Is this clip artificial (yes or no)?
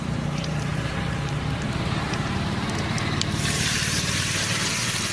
yes